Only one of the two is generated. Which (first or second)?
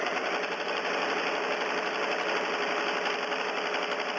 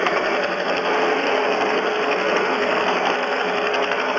second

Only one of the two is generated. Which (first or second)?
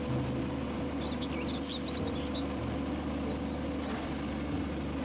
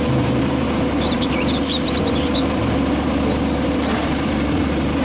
second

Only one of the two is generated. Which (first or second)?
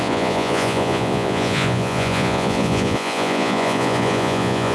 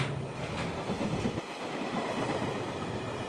first